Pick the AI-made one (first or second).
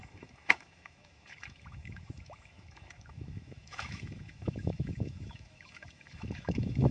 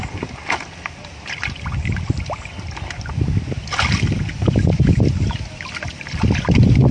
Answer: first